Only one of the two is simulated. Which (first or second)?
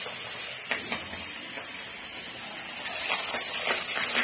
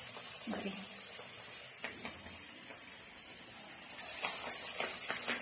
second